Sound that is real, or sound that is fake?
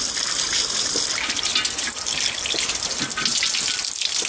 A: real